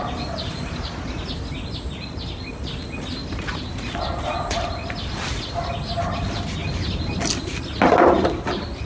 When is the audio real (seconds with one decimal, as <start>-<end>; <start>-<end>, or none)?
0.0-8.9